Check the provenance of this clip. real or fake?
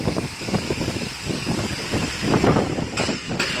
fake